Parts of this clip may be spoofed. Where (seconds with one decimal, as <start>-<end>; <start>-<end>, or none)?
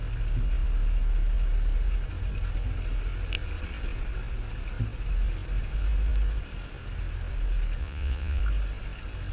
7.8-8.4